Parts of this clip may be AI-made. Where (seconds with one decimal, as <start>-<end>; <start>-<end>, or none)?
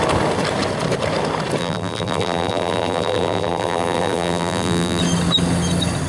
1.6-5.0